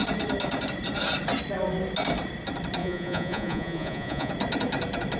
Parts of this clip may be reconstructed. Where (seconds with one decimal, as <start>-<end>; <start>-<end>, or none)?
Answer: 2.8-4.3